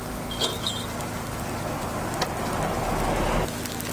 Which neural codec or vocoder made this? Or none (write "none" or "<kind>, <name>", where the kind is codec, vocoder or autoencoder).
none